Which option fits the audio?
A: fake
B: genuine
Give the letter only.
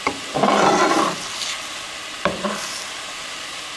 B